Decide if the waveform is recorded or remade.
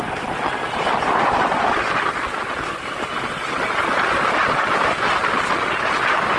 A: recorded